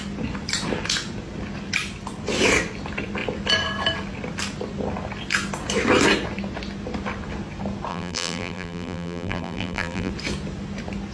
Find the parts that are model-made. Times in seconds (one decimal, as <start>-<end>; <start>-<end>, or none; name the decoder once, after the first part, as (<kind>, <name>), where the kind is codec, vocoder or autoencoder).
7.9-10.1 (vocoder, BigVGAN v2)